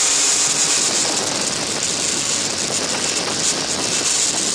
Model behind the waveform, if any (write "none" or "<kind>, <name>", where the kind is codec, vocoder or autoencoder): none